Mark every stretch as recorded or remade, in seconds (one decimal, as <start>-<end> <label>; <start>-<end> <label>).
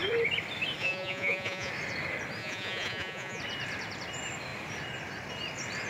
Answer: 0.0-0.8 recorded; 0.8-1.7 remade; 1.7-2.4 recorded; 2.4-3.4 remade; 3.4-5.9 recorded